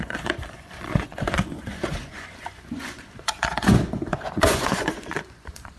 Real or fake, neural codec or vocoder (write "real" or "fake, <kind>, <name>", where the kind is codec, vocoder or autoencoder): fake, vocoder, Vocos